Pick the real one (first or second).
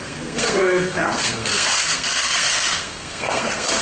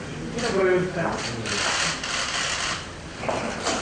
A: second